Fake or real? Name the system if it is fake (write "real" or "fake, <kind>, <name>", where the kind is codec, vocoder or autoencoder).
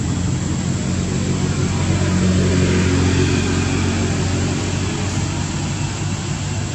real